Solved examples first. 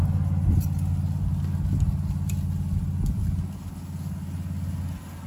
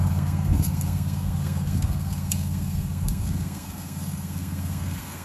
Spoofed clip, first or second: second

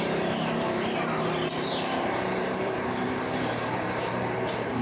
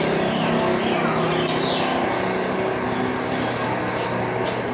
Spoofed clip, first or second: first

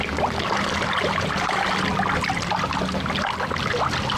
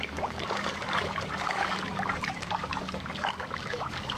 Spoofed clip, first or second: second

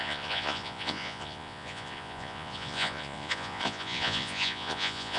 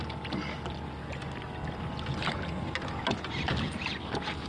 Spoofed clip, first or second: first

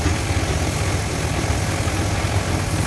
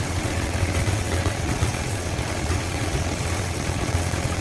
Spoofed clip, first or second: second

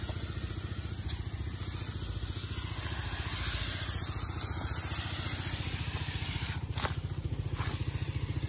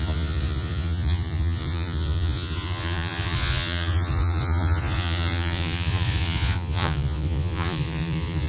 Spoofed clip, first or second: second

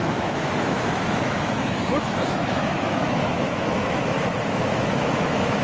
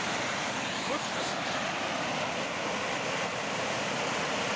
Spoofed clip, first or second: first